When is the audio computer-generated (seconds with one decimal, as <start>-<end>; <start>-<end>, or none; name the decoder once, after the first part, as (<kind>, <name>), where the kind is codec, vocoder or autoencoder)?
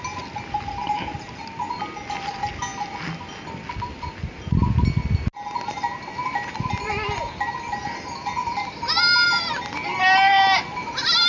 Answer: none